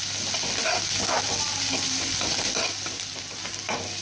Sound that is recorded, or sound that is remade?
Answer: recorded